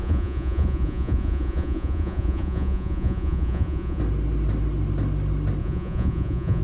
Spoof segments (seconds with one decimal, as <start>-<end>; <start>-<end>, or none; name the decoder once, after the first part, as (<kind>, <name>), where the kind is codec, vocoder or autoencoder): 0.0-4.0 (vocoder, Vocos); 5.6-6.6